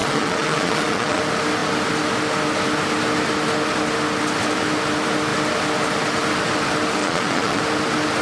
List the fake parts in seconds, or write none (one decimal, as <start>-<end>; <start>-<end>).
0.0-1.2; 7.0-7.6